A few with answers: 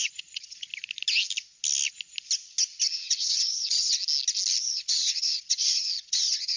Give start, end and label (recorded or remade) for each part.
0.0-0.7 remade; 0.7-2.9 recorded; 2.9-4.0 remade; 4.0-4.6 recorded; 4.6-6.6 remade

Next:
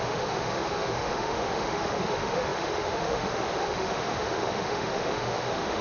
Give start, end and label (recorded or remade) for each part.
0.0-5.8 remade

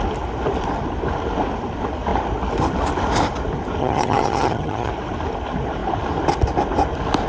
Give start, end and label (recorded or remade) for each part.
0.0-3.8 recorded; 3.8-4.9 remade; 4.9-7.3 recorded

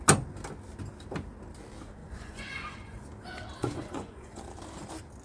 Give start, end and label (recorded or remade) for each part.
0.0-2.0 recorded; 2.0-3.0 remade; 3.0-3.6 recorded; 3.6-4.4 remade; 4.4-5.2 recorded